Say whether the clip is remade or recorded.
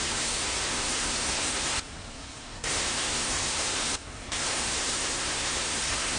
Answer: remade